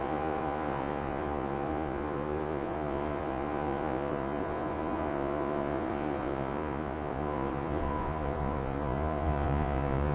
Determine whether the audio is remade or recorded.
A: remade